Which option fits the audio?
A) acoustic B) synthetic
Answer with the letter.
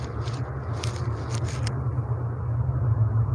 A